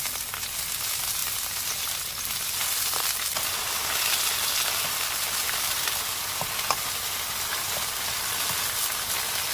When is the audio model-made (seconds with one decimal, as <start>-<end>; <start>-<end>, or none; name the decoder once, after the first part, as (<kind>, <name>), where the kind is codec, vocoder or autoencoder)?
none